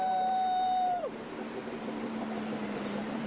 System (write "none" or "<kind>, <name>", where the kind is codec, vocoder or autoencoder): vocoder, BigVGAN v2